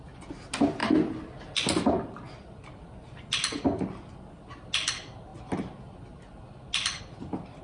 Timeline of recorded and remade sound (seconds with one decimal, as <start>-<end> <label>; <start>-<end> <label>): 0.0-7.6 recorded